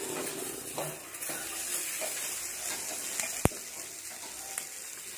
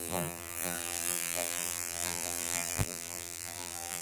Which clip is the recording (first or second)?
first